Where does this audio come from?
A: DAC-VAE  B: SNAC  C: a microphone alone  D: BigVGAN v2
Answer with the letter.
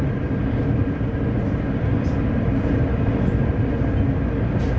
C